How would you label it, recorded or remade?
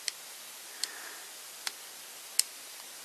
recorded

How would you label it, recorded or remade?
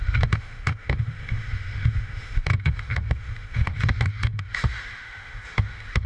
remade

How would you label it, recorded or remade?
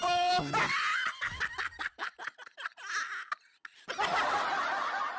recorded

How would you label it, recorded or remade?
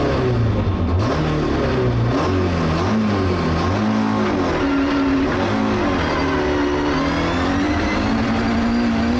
recorded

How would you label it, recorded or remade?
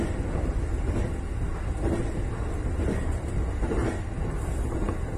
recorded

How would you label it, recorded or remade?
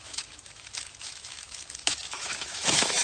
remade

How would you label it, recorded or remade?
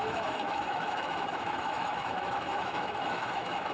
remade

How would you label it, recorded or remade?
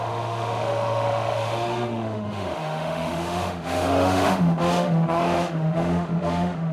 remade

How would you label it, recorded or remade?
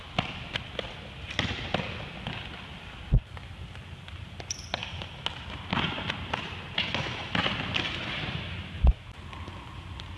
recorded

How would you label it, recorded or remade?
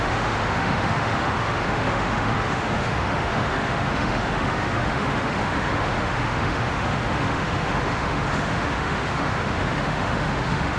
remade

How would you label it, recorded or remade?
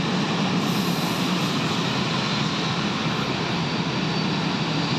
recorded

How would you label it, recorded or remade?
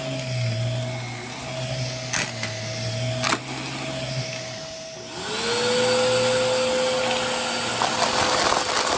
recorded